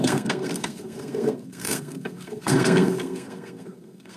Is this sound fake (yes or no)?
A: yes